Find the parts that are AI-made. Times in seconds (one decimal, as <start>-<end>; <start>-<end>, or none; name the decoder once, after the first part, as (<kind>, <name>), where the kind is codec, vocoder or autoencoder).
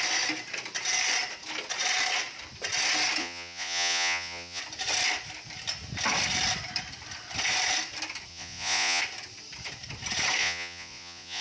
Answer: 3.2-4.6 (vocoder, Vocos); 8.3-9.0; 10.4-11.4